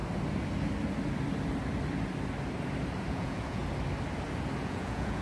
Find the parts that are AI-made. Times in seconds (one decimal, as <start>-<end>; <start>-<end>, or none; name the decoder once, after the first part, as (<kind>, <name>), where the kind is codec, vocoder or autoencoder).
3.1-3.6 (vocoder, Vocos); 4.6-5.2